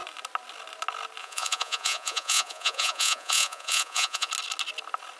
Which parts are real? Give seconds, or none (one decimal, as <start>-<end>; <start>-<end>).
0.0-1.2; 4.3-5.2